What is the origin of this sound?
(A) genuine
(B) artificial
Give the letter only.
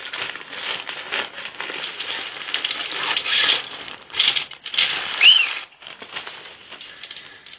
A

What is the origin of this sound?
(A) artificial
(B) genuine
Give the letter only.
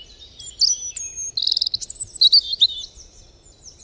B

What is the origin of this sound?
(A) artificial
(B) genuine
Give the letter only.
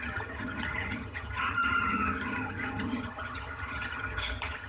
A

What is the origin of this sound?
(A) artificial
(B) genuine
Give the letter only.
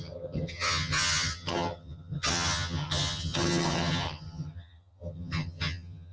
A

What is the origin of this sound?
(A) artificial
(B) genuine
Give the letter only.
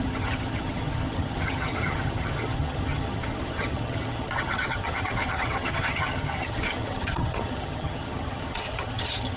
A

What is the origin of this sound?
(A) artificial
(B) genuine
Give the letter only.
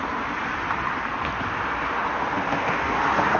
B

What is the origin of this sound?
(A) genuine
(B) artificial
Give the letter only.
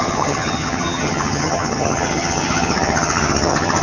B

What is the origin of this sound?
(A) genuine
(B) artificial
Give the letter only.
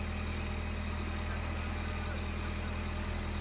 A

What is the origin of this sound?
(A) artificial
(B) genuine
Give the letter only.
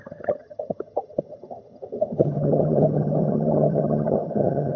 A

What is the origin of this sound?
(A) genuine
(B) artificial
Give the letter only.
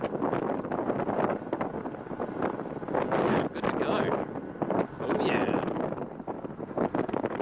A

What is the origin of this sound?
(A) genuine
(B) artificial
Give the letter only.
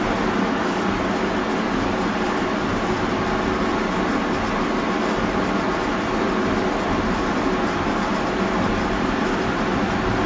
A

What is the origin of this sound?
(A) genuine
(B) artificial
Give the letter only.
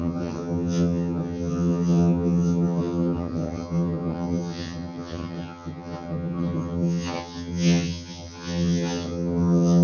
B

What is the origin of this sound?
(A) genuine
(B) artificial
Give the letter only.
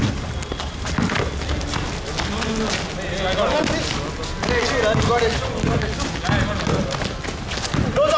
A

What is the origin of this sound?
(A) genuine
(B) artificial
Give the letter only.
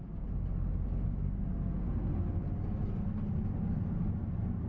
A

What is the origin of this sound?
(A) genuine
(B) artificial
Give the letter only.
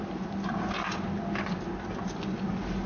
A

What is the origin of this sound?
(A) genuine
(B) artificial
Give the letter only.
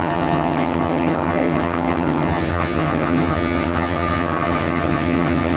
B